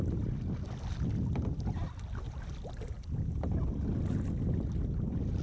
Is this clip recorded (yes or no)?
yes